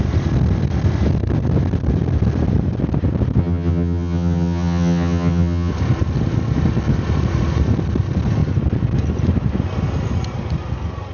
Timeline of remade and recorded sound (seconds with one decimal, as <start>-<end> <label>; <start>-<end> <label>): 0.0-3.4 recorded; 3.4-5.7 remade; 5.7-11.1 recorded